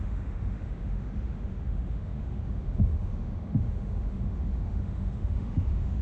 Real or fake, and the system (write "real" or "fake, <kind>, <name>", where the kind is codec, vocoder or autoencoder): fake, autoencoder, DAC-VAE